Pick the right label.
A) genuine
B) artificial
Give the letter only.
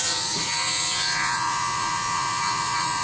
B